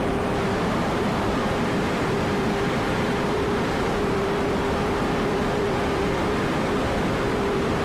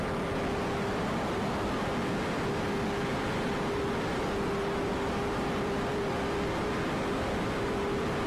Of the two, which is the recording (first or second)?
second